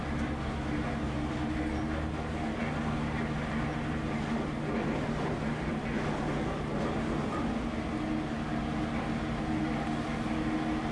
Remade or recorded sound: recorded